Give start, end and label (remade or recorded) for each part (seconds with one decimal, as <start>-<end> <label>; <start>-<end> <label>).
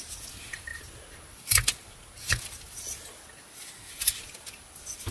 0.0-5.1 recorded